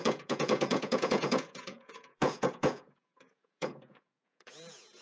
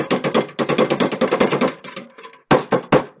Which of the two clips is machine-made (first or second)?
first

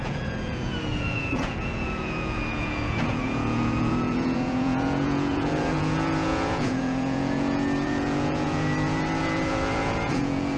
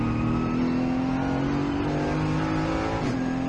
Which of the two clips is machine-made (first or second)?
first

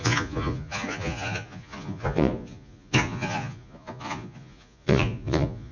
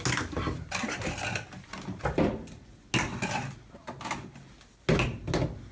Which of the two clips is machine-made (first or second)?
first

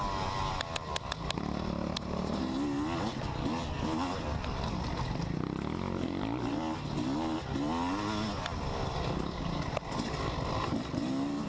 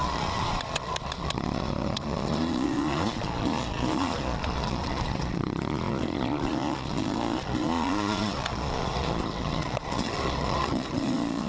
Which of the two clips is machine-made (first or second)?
second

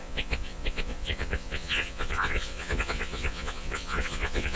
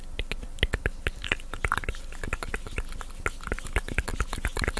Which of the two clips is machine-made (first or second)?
first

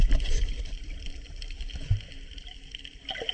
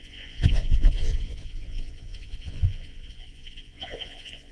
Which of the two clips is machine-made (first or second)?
second